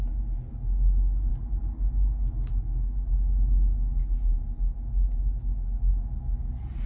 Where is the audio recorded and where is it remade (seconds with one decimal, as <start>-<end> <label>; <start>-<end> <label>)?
0.0-6.9 recorded